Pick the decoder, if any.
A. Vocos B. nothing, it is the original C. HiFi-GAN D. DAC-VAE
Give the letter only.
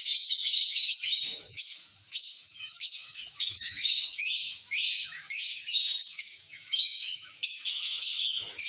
D